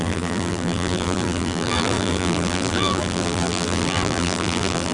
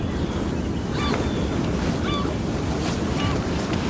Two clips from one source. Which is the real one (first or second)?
second